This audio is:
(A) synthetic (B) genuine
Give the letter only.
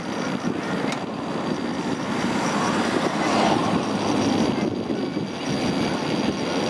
B